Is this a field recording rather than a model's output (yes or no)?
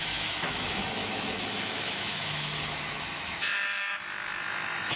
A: no